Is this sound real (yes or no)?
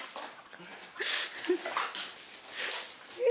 yes